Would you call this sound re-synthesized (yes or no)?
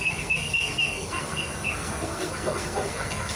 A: yes